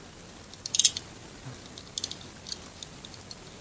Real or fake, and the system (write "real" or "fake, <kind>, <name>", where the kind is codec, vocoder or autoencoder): real